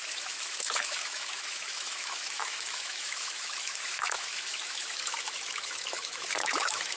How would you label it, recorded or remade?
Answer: remade